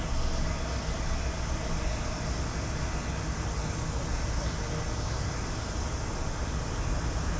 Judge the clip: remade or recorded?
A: recorded